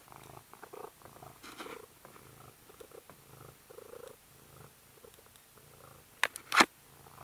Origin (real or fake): real